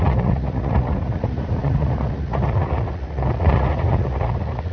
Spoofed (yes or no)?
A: yes